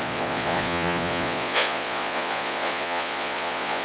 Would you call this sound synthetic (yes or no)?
yes